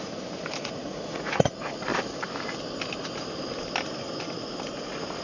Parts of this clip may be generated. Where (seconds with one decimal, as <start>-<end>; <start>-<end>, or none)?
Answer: 0.6-1.9